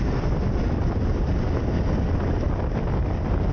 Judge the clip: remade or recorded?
recorded